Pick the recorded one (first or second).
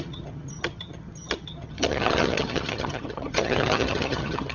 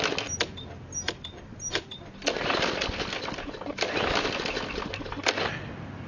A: second